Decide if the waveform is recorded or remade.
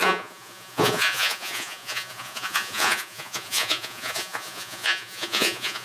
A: remade